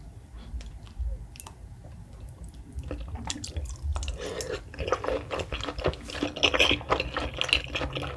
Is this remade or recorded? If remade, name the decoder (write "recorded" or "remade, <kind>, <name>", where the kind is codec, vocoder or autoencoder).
recorded